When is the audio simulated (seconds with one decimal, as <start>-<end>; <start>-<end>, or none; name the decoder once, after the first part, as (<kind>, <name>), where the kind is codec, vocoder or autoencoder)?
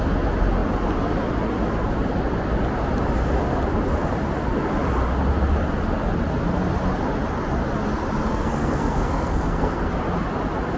8.3-9.9 (codec, SNAC)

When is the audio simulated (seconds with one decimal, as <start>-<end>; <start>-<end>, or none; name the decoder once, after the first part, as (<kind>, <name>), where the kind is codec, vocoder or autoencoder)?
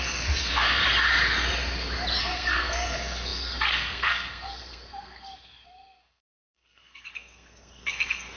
0.0-0.8 (codec, SNAC); 2.2-8.4